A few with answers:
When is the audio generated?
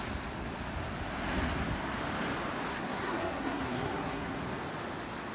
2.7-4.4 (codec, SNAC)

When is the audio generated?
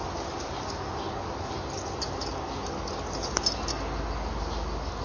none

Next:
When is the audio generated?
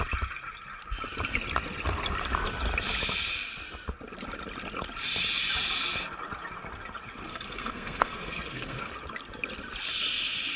7.3-8.9 (codec, SNAC)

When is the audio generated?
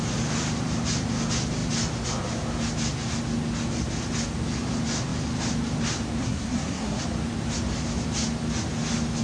6.2-7.0 (codec, SNAC)